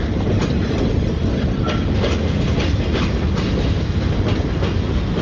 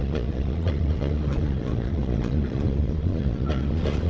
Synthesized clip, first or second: second